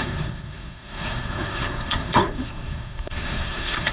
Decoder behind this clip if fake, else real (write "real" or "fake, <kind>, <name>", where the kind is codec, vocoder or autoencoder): fake, codec, SNAC